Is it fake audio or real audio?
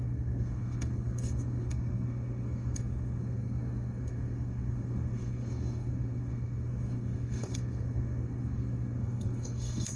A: fake